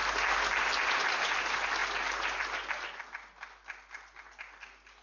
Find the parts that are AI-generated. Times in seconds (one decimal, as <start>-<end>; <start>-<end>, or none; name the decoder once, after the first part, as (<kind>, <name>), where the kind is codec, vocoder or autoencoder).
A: none